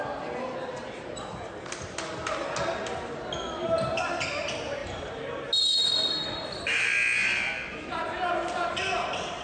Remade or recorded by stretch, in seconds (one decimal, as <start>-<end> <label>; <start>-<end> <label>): 0.0-9.4 recorded